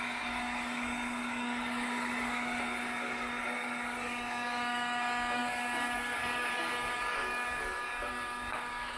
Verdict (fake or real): fake